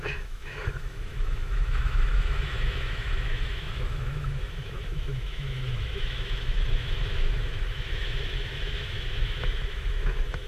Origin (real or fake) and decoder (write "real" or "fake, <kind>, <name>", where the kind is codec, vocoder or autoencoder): fake, autoencoder, DAC-VAE